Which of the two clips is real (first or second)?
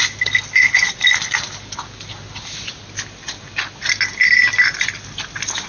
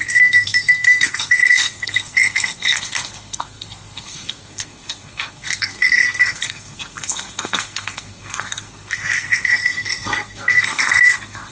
first